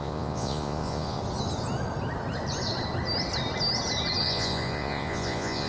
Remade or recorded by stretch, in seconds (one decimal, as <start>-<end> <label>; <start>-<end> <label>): 0.0-1.2 remade; 1.2-4.2 recorded; 4.2-5.7 remade